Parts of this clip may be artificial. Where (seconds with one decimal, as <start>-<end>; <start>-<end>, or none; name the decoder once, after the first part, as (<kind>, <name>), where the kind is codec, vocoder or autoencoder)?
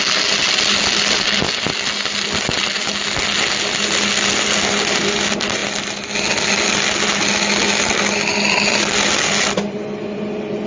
none